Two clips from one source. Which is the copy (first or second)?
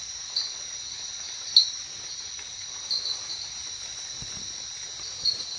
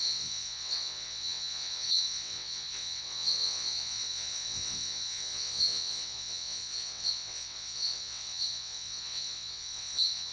second